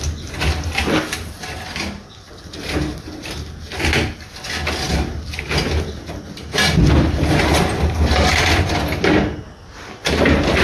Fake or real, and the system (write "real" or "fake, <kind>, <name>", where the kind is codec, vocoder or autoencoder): real